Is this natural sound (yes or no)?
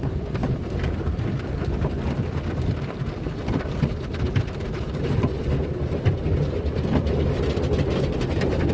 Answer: no